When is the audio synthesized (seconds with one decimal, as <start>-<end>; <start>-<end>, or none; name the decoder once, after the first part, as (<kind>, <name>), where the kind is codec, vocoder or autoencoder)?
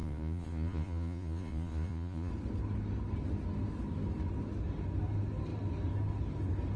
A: 0.0-2.3 (vocoder, Vocos)